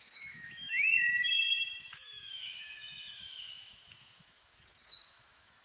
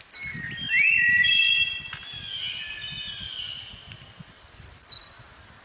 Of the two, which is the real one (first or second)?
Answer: second